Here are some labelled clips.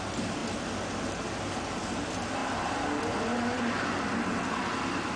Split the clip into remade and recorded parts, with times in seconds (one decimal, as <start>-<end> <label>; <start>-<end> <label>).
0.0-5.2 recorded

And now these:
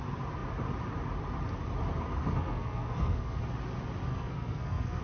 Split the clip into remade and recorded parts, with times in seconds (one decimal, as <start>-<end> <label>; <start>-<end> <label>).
0.0-2.2 recorded; 2.2-3.4 remade; 3.4-4.1 recorded; 4.1-5.0 remade

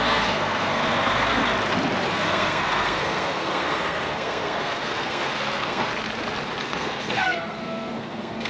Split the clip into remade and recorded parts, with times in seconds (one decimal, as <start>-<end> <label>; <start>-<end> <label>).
0.0-1.4 remade; 1.4-2.1 recorded; 2.1-5.9 remade; 5.9-6.6 recorded; 6.6-8.5 remade

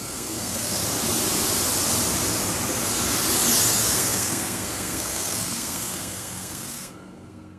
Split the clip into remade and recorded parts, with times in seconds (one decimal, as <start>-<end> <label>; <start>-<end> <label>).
0.0-0.8 remade; 0.8-3.6 recorded; 3.6-7.6 remade

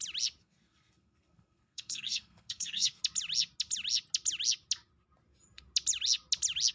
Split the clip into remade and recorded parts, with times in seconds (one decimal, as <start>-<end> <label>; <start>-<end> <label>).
0.0-0.4 recorded; 0.4-3.0 remade; 3.0-6.7 recorded